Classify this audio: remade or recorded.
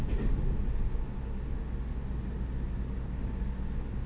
recorded